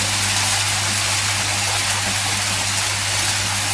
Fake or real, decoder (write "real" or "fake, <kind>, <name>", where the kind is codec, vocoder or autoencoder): real